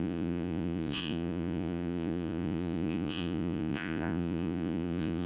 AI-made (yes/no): yes